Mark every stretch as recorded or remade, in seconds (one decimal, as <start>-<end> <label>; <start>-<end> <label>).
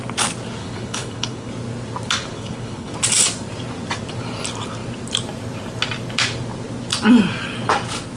0.0-0.6 recorded; 0.6-1.5 remade; 1.5-2.3 recorded; 2.3-2.9 remade; 2.9-8.2 recorded